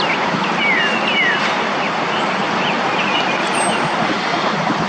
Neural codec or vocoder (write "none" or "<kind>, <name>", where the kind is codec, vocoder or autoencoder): none